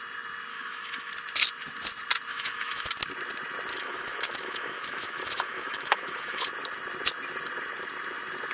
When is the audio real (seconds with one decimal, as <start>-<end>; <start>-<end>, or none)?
0.0-0.5; 1.1-2.3; 2.9-3.7; 6.4-8.5